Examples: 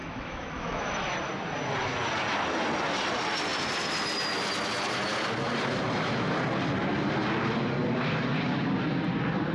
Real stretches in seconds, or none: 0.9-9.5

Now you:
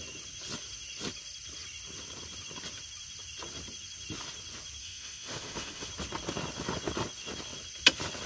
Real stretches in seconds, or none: 0.0-4.8; 5.9-8.3

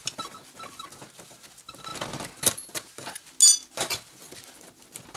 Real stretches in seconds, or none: 0.0-5.2

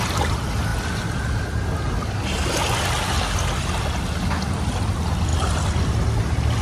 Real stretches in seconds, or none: 0.0-6.6

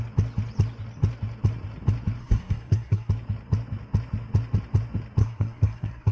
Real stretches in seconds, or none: 0.0-2.2; 3.1-5.2